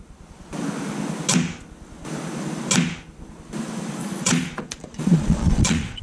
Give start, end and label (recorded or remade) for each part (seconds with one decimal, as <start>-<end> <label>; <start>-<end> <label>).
0.0-4.0 recorded; 4.0-6.0 remade